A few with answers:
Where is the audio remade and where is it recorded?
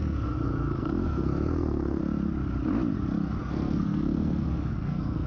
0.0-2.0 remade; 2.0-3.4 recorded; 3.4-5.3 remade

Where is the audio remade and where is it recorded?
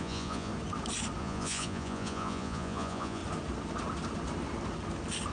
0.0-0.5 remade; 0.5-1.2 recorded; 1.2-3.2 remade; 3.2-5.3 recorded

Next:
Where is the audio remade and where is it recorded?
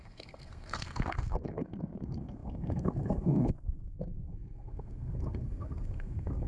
0.0-6.5 remade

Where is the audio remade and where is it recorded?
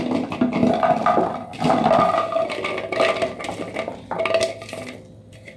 0.0-5.6 recorded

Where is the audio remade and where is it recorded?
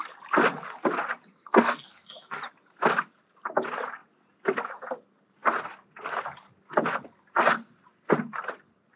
0.0-1.3 recorded; 1.3-2.4 remade; 2.4-9.0 recorded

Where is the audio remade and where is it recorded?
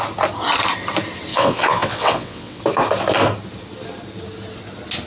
0.0-1.3 recorded; 1.3-2.6 remade; 2.6-5.1 recorded